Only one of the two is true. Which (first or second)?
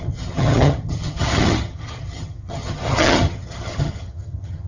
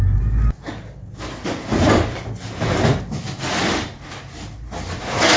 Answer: second